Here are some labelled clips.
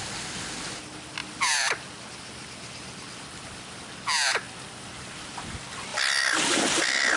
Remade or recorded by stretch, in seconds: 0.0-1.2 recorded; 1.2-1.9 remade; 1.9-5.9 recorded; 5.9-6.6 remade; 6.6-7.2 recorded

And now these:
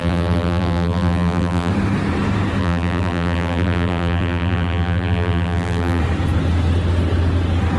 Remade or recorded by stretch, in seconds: 0.0-1.7 remade; 1.7-2.6 recorded; 2.6-6.0 remade; 6.0-7.8 recorded

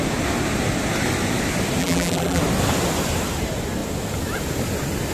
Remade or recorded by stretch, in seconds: 0.0-1.8 recorded; 1.8-2.4 remade; 2.4-5.1 recorded

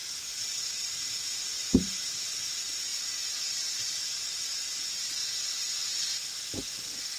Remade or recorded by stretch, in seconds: 0.0-5.2 remade; 5.2-7.2 recorded

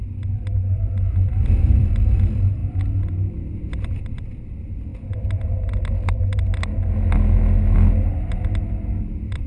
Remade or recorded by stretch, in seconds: 0.0-2.6 remade; 2.6-3.3 recorded; 3.3-4.9 remade; 4.9-9.5 recorded

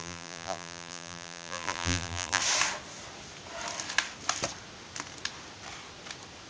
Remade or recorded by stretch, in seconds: 0.0-2.4 remade; 2.4-6.5 recorded

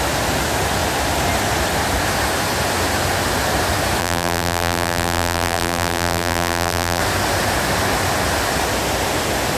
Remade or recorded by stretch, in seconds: 0.0-4.0 recorded; 4.0-7.0 remade; 7.0-9.6 recorded

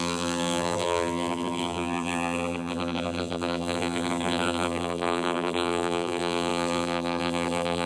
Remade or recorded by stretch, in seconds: 0.0-7.9 remade